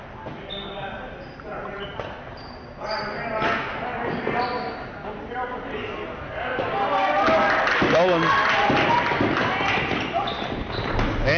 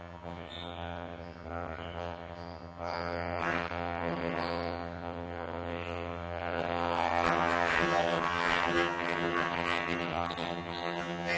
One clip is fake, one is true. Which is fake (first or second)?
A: second